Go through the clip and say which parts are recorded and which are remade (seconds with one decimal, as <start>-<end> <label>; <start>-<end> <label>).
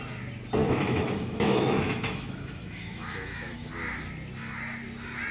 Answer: 0.0-0.6 recorded; 0.6-3.7 remade; 3.7-5.3 recorded